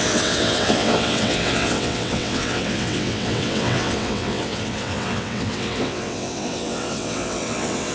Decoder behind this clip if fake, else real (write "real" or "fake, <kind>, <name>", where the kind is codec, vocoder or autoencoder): fake, vocoder, WaveNeXt